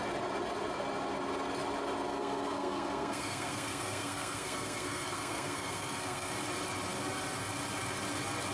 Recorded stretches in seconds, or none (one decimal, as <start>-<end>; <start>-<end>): 0.0-2.1; 6.3-8.5